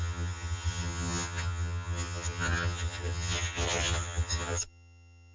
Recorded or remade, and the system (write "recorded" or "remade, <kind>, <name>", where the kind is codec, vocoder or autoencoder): remade, vocoder, HiFi-GAN